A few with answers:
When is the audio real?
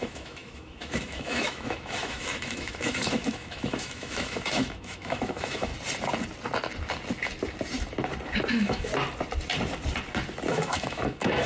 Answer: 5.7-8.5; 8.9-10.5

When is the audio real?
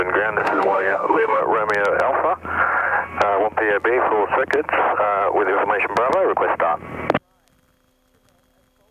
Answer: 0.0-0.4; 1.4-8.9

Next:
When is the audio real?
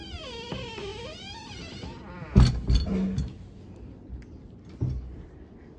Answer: 0.0-5.8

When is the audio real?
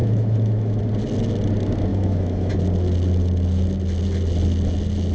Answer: 0.8-1.9; 2.5-5.1